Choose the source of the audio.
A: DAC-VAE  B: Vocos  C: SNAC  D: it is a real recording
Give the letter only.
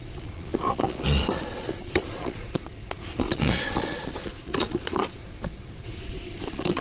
B